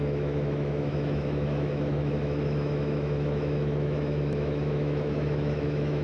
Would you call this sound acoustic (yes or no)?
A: no